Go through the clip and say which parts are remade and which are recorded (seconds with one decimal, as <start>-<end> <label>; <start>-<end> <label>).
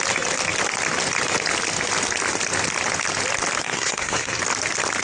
0.0-3.6 recorded; 3.6-4.4 remade; 4.4-5.0 recorded